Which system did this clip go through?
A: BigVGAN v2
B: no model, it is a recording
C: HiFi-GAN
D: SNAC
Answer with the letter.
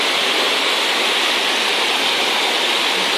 B